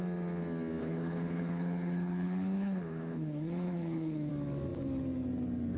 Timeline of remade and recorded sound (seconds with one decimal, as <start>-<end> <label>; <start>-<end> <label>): 0.0-0.8 recorded; 0.8-4.3 remade; 4.3-5.8 recorded